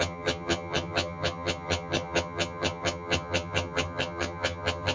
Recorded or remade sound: remade